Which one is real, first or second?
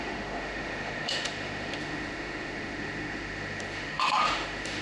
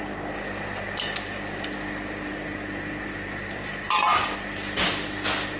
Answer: second